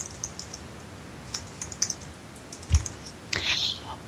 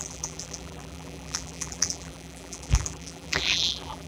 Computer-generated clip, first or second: second